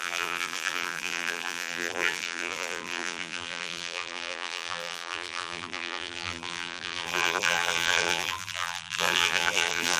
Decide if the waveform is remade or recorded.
remade